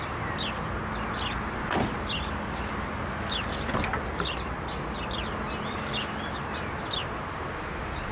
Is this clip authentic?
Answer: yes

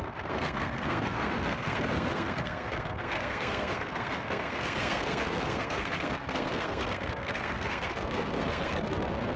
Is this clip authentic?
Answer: no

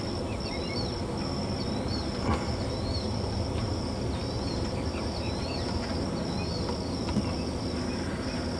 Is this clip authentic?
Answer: yes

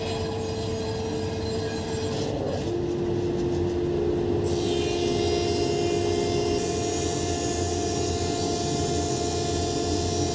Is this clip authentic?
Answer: yes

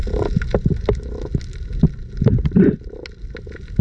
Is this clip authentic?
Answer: yes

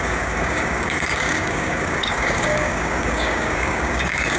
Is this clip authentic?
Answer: no